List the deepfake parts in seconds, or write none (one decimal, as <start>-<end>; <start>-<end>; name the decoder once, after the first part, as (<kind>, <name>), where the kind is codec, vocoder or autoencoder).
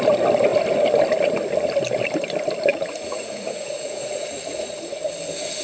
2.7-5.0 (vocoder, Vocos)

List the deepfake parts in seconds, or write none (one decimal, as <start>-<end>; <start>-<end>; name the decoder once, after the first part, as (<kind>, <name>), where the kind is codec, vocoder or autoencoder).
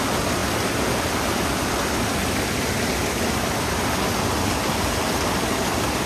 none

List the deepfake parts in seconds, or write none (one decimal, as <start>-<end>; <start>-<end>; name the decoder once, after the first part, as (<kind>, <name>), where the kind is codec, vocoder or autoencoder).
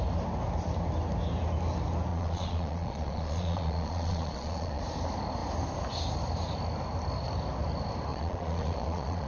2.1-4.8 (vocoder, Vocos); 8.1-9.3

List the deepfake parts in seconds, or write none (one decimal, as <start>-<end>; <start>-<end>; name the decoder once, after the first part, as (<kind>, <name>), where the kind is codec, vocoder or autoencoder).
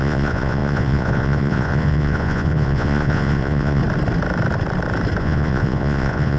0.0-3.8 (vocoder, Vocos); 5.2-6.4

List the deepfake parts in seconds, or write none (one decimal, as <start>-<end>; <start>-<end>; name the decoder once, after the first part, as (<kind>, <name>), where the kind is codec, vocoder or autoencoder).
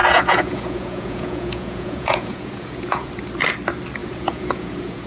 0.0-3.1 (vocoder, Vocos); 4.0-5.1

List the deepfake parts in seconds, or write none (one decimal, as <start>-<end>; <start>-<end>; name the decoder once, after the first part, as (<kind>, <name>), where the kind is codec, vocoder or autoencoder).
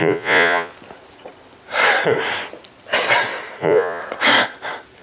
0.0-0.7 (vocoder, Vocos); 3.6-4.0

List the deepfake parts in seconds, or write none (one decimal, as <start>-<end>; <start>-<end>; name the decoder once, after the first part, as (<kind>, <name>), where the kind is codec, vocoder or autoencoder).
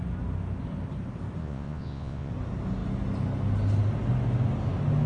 1.4-2.3 (vocoder, Vocos)